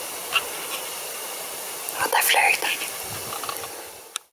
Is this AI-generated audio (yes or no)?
no